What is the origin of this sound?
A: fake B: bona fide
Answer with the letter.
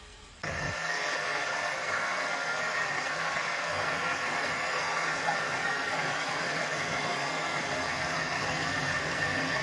A